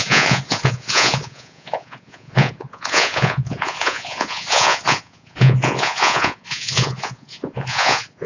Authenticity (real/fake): fake